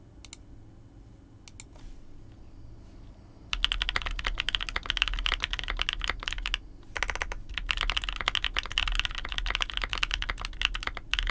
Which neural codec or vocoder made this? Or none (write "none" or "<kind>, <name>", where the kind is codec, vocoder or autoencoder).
none